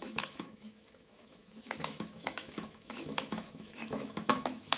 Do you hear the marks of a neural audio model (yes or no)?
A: yes